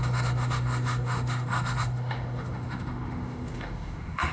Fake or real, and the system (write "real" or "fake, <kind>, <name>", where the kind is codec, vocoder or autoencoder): fake, autoencoder, DAC-VAE